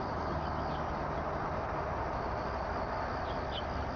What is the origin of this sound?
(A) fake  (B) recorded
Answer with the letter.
B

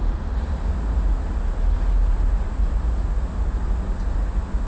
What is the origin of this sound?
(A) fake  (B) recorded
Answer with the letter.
B